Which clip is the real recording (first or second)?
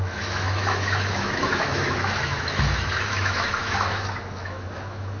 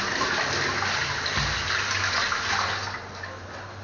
second